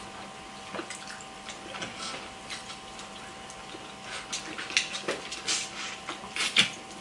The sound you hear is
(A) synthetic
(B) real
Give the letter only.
B